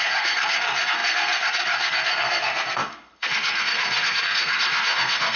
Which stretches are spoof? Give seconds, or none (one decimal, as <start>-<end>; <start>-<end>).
0.0-5.4